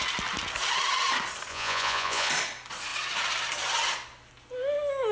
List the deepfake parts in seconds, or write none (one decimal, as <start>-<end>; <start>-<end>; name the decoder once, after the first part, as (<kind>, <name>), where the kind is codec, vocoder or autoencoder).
1.5-2.3 (vocoder, Vocos)